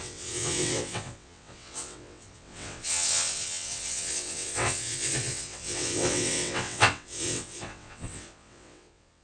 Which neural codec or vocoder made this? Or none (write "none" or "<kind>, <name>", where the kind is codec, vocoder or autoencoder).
vocoder, WaveNeXt